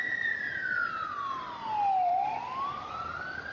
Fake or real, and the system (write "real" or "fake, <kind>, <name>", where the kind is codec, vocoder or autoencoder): real